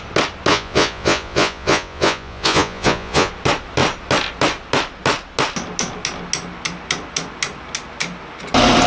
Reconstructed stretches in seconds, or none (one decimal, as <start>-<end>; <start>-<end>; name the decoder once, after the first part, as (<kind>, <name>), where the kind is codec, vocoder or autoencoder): 0.5-3.3 (vocoder, Vocos)